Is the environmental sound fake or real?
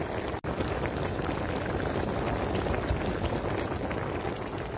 real